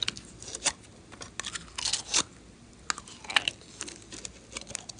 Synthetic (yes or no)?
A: no